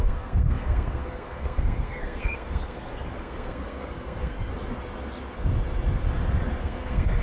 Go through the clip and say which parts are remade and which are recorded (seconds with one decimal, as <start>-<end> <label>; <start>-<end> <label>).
0.0-4.5 remade; 4.5-6.6 recorded; 6.6-7.2 remade